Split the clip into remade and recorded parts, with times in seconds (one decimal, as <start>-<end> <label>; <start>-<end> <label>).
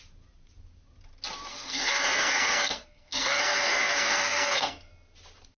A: 0.0-1.5 recorded; 1.5-4.9 remade; 4.9-5.6 recorded